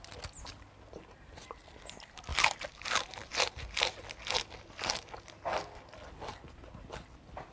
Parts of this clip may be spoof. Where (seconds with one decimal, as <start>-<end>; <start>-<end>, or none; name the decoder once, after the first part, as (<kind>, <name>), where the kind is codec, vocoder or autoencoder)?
2.3-3.5 (vocoder, BigVGAN v2)